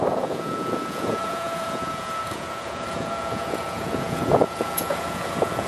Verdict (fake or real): fake